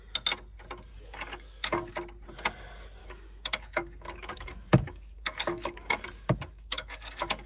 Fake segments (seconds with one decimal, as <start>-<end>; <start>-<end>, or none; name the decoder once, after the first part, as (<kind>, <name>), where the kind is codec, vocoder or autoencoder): 0.9-1.9 (codec, DAC); 3.0-7.5